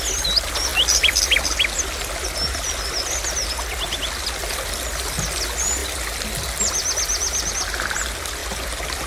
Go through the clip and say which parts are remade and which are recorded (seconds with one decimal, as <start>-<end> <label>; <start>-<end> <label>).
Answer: 0.0-9.1 recorded